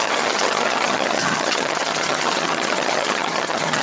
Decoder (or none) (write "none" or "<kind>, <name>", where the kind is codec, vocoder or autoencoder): vocoder, HiFi-GAN